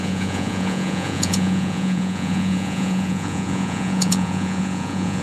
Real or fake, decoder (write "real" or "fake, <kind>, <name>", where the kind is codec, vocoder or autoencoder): fake, vocoder, Vocos